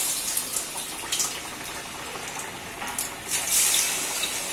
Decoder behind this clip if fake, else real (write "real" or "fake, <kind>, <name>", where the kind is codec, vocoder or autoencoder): real